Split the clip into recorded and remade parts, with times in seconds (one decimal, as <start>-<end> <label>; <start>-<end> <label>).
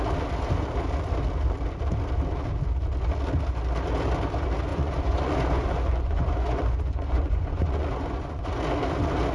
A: 0.0-4.7 recorded; 4.7-8.6 remade; 8.6-9.3 recorded